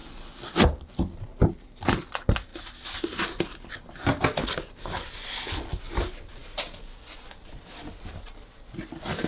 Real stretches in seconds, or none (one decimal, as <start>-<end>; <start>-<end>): 0.0-9.3

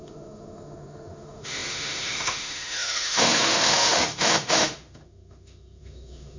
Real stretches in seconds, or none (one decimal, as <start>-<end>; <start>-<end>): none

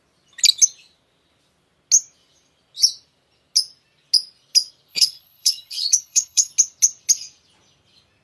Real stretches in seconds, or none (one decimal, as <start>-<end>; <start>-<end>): 0.0-4.9; 6.5-8.2

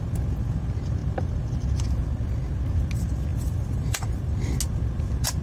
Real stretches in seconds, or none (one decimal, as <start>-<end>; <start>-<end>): 0.0-3.3; 4.4-5.4